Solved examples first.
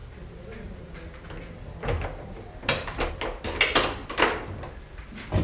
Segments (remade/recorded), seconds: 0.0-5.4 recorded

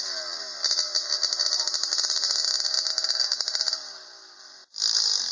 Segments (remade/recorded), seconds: 0.0-2.9 recorded; 2.9-3.7 remade; 3.7-5.3 recorded

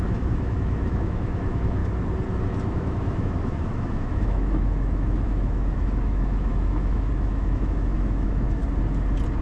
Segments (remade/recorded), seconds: 0.0-1.8 remade; 1.8-2.4 recorded; 2.4-8.6 remade; 8.6-9.4 recorded

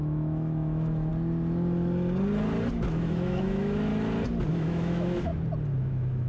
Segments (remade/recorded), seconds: 0.0-1.1 remade; 1.1-2.7 recorded; 2.7-3.9 remade; 3.9-4.5 recorded; 4.5-5.3 remade; 5.3-5.8 recorded; 5.8-6.3 remade

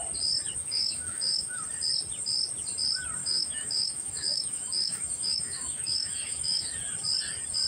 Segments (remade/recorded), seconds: 0.0-0.6 recorded; 0.6-1.6 remade; 1.6-3.2 recorded; 3.2-6.7 remade; 6.7-7.7 recorded

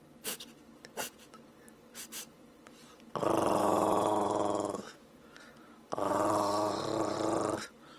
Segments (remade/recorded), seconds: 0.0-3.6 recorded; 3.6-5.1 remade; 5.1-8.0 recorded